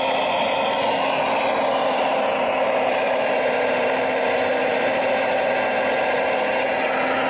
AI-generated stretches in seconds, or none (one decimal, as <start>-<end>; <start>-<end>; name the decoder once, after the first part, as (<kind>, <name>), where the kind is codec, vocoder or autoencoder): 1.8-5.5 (vocoder, BigVGAN v2)